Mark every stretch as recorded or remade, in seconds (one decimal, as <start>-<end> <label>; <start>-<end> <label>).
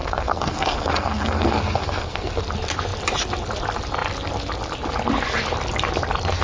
0.0-2.4 remade; 2.4-6.4 recorded